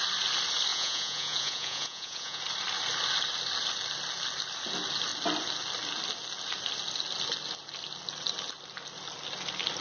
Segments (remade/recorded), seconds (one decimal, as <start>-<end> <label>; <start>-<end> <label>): 0.0-0.7 recorded; 0.7-2.4 remade; 2.4-9.8 recorded